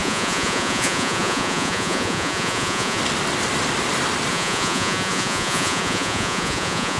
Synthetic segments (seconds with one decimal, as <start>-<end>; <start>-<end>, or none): 0.0-3.0; 4.3-7.0